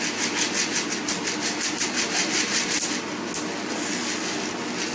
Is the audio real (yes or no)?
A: yes